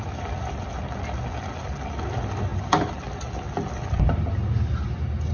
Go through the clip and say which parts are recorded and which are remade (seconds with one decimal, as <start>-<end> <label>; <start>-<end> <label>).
0.0-5.3 recorded

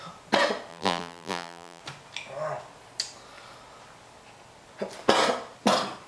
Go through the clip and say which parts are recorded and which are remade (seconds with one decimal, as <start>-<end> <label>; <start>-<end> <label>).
0.0-0.7 recorded; 0.7-1.8 remade; 1.8-6.1 recorded

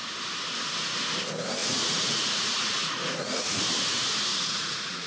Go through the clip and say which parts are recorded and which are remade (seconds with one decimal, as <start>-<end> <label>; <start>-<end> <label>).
0.0-1.6 recorded; 1.6-3.6 remade; 3.6-4.3 recorded; 4.3-5.1 remade